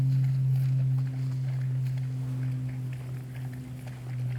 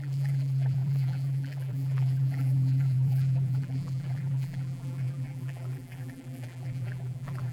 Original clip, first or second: first